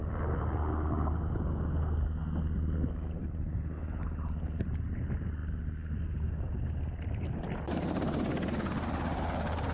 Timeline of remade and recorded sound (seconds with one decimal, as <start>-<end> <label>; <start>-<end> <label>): 0.0-5.4 recorded; 5.4-7.9 remade; 7.9-9.7 recorded